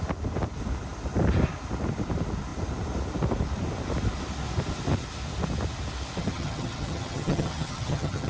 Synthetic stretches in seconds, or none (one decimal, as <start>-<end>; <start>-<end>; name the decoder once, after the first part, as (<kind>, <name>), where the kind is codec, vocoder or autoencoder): 6.2-8.3 (vocoder, HiFi-GAN)